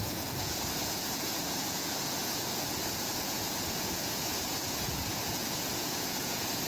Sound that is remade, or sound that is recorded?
remade